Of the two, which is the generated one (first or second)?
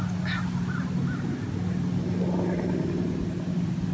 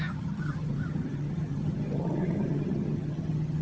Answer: second